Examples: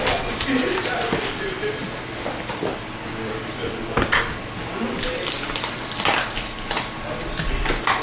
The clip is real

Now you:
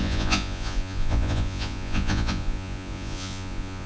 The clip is fake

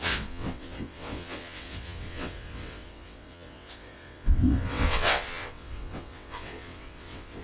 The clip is fake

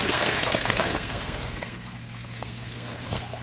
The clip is fake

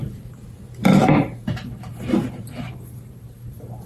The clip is fake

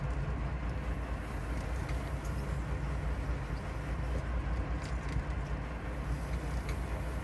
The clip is real